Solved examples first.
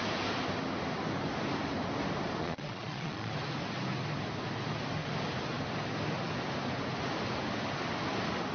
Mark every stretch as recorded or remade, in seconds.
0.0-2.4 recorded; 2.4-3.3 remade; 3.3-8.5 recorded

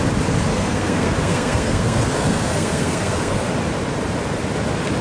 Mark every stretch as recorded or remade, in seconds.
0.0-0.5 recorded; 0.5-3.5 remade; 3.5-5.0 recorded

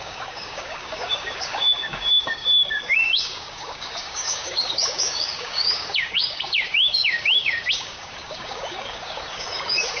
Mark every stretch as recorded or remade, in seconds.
0.0-10.0 remade